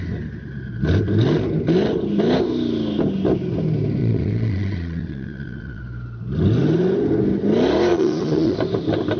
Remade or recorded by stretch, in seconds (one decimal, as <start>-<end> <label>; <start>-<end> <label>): 0.0-4.0 recorded; 4.0-5.8 remade; 5.8-7.9 recorded; 7.9-8.6 remade; 8.6-9.2 recorded